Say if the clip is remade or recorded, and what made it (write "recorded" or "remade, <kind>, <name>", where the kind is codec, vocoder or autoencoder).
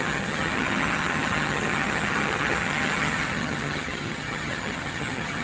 remade, vocoder, HiFi-GAN